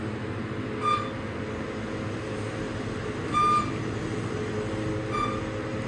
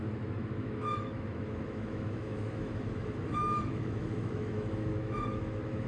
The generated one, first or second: second